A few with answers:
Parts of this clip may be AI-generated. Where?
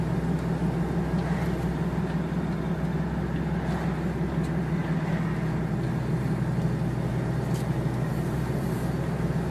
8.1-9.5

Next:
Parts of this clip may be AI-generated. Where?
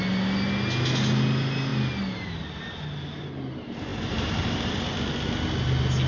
3.9-4.6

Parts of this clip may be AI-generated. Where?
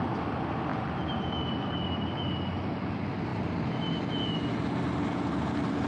none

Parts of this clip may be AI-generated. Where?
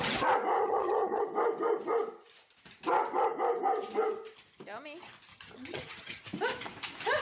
0.6-1.2; 5.3-6.2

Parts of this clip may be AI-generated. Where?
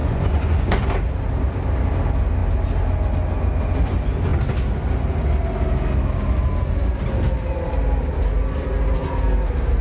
0.0-0.8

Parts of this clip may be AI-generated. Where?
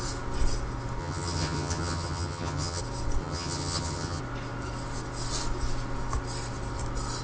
1.0-2.8; 3.2-4.2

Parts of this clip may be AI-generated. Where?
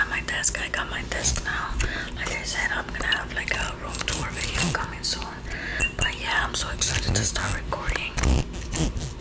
none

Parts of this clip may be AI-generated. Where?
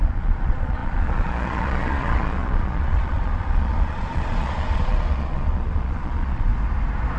0.0-6.5